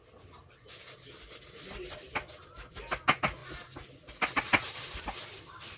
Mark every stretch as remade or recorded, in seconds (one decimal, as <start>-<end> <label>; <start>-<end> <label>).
0.0-5.8 recorded